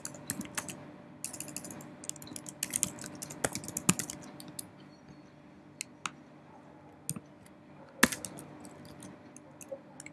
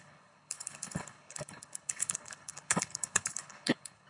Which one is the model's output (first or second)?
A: second